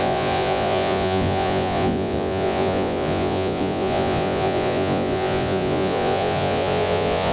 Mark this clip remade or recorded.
remade